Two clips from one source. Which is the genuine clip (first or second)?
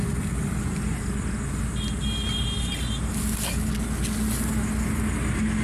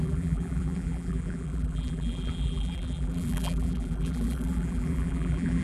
first